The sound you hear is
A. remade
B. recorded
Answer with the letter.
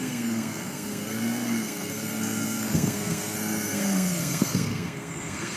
A